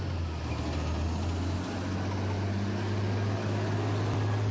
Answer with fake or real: real